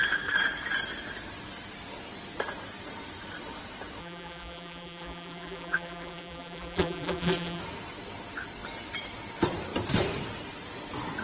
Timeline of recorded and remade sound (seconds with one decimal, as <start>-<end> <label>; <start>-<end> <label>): 0.0-4.0 recorded; 4.0-7.6 remade; 7.6-11.2 recorded

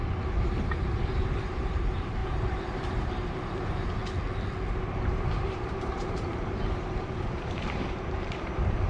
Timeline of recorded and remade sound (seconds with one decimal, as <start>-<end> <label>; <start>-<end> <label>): 0.0-4.0 remade; 4.0-4.7 recorded; 4.7-8.9 remade

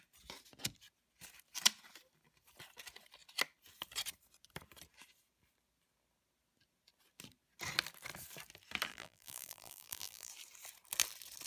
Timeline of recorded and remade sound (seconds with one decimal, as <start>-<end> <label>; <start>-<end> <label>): 0.0-8.9 recorded; 8.9-10.3 remade; 10.3-11.5 recorded

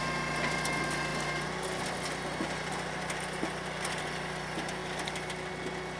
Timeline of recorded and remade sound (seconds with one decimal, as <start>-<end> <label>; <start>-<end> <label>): 0.0-6.0 recorded

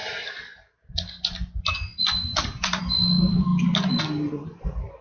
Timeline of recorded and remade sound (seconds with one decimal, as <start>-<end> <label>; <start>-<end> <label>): 0.0-0.9 remade; 0.9-2.3 recorded; 2.3-2.8 remade; 2.8-5.0 recorded

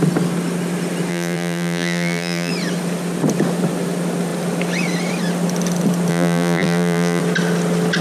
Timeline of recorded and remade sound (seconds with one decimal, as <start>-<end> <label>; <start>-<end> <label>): 0.0-1.1 recorded; 1.1-2.5 remade; 2.5-6.1 recorded; 6.1-7.2 remade; 7.2-8.0 recorded

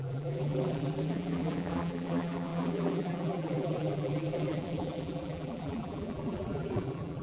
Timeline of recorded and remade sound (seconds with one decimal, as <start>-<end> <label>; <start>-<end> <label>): 0.0-7.2 remade